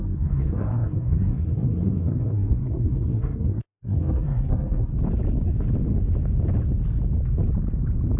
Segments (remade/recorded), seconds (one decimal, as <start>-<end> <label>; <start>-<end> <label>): 0.0-4.9 remade; 4.9-8.2 recorded